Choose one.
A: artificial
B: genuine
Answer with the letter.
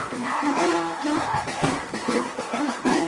A